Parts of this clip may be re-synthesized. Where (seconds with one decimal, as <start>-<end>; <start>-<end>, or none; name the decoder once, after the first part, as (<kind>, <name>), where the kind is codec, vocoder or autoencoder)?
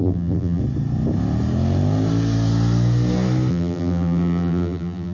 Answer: 0.0-0.6 (vocoder, BigVGAN v2); 3.5-5.1